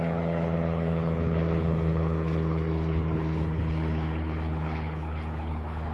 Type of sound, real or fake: fake